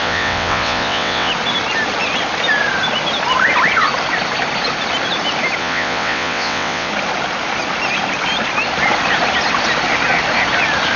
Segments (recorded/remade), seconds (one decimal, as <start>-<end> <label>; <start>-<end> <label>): 0.0-1.3 remade; 1.3-5.6 recorded; 5.6-6.9 remade; 6.9-11.0 recorded